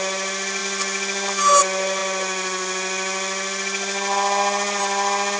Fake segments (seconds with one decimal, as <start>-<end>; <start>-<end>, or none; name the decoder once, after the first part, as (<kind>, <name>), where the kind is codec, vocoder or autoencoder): none